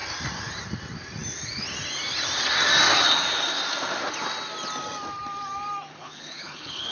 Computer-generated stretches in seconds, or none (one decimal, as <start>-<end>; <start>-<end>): 5.9-6.9

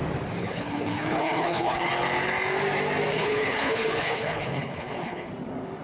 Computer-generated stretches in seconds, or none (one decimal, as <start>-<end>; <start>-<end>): 0.4-1.9; 3.1-5.3

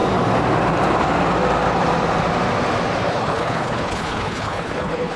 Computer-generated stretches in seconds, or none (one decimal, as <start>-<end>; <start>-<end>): 3.1-5.2

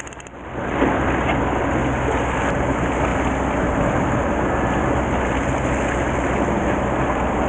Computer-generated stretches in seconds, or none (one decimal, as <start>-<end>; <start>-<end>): none

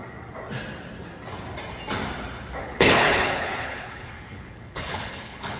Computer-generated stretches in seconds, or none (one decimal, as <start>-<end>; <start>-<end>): 2.6-5.6

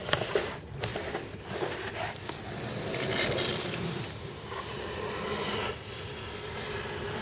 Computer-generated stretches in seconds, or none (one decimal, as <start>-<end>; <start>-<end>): none